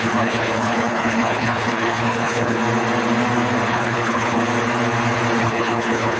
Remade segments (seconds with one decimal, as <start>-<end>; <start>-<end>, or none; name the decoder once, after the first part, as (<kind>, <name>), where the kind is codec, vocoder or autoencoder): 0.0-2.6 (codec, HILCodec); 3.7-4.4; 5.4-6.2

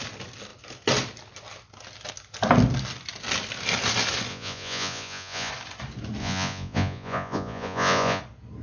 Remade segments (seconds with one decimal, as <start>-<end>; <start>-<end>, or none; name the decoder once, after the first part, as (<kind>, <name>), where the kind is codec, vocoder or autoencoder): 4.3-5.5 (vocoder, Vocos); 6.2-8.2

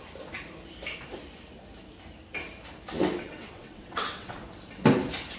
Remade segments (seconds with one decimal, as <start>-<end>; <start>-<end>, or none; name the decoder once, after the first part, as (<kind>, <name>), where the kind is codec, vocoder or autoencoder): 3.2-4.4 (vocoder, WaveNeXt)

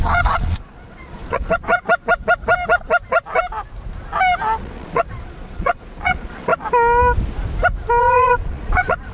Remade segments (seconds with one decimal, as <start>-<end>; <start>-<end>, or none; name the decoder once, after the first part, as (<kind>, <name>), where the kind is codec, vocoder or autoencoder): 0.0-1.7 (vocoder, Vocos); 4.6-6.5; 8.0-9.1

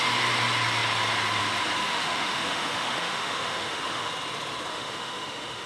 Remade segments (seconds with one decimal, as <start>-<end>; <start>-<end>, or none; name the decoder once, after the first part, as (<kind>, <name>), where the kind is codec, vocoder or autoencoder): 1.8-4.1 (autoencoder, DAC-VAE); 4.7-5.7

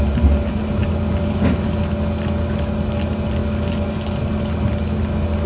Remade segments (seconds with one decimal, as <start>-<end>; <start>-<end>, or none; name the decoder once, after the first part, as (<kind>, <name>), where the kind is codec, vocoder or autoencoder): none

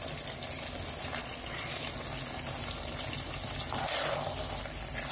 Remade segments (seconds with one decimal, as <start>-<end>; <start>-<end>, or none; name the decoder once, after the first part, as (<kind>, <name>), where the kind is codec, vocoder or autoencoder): 1.2-1.8 (vocoder, Vocos)

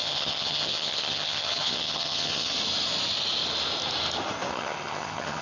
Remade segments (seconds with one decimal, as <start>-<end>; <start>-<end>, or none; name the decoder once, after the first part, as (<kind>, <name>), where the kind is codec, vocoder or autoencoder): 0.0-2.5 (vocoder, HiFi-GAN); 4.5-5.4